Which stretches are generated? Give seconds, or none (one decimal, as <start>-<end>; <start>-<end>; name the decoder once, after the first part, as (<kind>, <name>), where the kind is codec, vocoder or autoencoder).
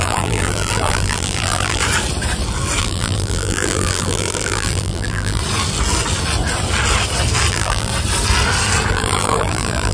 0.0-1.8 (vocoder, BigVGAN v2); 2.8-5.4; 7.5-7.9; 8.9-9.9